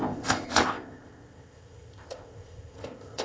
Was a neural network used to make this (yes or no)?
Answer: yes